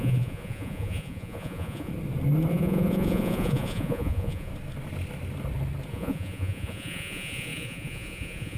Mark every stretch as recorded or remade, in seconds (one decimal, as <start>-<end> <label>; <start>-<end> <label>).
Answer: 0.0-1.9 remade; 1.9-2.5 recorded; 2.5-4.5 remade; 4.5-5.9 recorded; 5.9-8.6 remade